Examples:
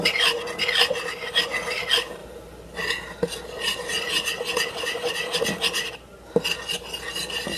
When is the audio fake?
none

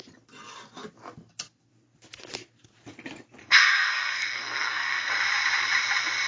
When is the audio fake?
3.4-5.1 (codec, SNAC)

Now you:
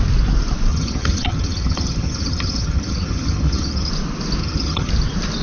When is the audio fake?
0.7-3.9 (vocoder, HiFi-GAN); 4.4-4.9

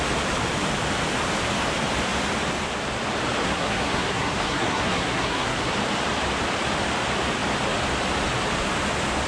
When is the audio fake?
3.4-5.7 (codec, SNAC)

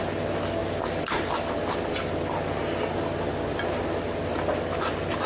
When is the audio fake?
none

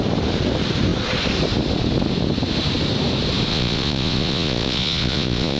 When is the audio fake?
3.5-5.6 (vocoder, Vocos)